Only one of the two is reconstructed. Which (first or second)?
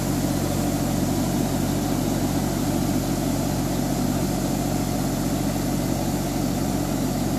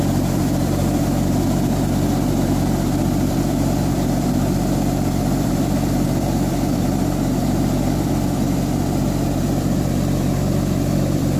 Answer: second